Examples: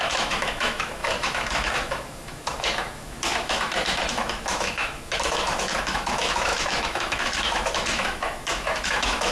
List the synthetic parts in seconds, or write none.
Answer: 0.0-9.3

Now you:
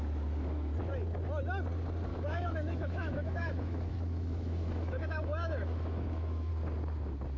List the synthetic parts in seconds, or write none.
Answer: 2.1-6.5

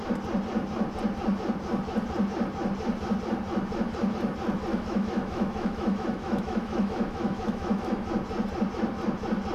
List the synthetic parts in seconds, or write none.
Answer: 4.7-8.1

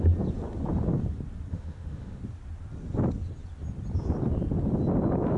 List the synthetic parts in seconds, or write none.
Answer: 1.5-2.2

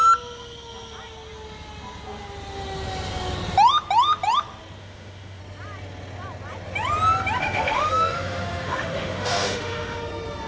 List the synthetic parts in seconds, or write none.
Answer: 4.8-5.4; 7.4-10.0

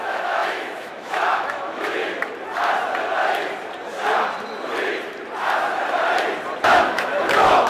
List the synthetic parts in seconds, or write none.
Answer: 0.0-2.0; 6.6-7.7